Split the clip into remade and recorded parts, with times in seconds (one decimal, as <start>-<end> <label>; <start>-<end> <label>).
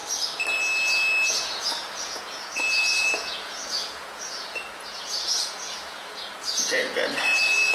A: 0.0-1.3 recorded; 1.3-7.7 remade